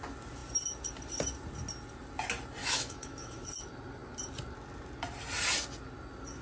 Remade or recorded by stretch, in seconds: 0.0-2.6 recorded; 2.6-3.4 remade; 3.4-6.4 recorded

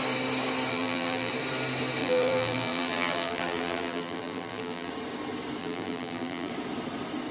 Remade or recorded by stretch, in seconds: 0.0-0.7 recorded; 0.7-1.3 remade; 1.3-2.0 recorded; 2.0-4.9 remade; 4.9-5.6 recorded; 5.6-6.5 remade; 6.5-7.3 recorded

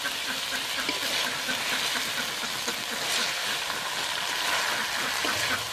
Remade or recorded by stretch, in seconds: 0.0-5.7 recorded